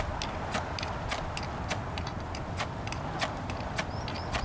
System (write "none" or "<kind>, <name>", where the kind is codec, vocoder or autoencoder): none